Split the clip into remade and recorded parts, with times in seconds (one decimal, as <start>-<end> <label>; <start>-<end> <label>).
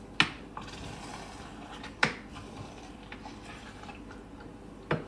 0.0-1.1 recorded; 1.1-4.2 remade; 4.2-5.1 recorded